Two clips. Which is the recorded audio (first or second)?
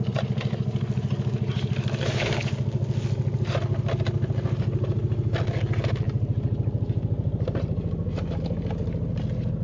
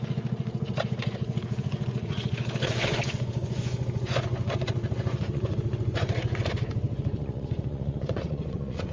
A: first